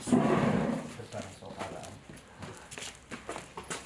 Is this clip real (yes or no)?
yes